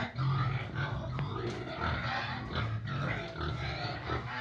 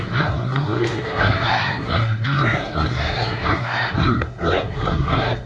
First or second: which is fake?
second